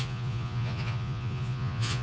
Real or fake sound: fake